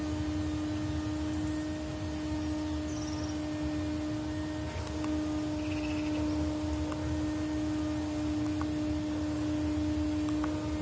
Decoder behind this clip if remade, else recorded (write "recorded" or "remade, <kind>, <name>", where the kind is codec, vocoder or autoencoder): recorded